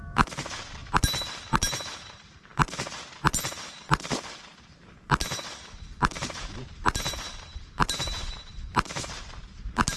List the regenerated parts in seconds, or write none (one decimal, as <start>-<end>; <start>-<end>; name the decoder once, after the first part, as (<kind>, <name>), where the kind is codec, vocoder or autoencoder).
0.0-10.0 (vocoder, BigVGAN v2)